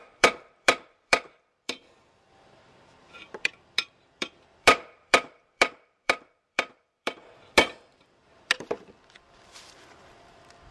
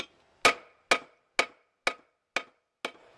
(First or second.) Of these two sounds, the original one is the second